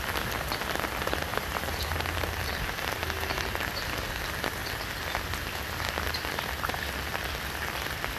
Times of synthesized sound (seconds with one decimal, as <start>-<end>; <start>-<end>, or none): 1.3-2.0